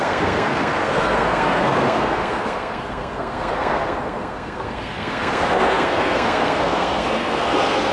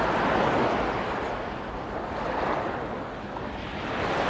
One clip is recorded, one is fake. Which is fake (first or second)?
first